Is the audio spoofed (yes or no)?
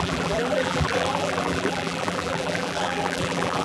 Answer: yes